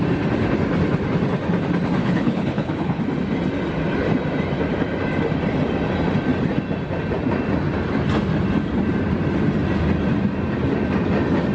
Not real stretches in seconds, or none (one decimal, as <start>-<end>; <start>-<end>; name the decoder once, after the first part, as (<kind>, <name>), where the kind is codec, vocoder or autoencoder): 2.0-3.0 (codec, HILCodec)